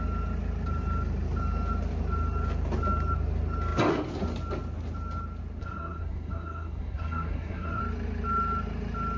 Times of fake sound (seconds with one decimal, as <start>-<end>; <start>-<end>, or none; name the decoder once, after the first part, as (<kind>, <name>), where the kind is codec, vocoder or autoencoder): 5.6-7.8 (codec, SNAC)